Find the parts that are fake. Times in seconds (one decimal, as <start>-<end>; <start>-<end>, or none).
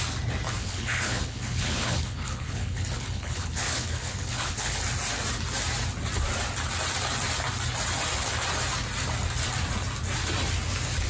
0.6-4.8